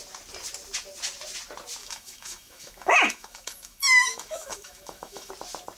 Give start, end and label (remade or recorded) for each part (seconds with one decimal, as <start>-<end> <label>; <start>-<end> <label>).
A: 0.0-1.8 recorded; 1.8-5.3 remade; 5.3-5.8 recorded

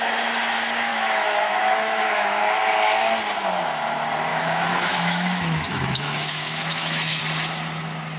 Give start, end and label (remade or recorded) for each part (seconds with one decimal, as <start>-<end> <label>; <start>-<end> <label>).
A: 0.0-0.9 recorded; 0.9-2.4 remade; 2.4-4.3 recorded; 4.3-7.2 remade; 7.2-8.2 recorded